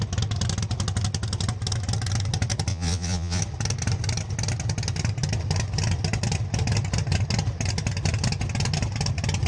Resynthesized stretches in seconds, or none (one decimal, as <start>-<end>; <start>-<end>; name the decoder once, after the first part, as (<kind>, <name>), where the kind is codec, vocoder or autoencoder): 2.7-3.4 (vocoder, Vocos)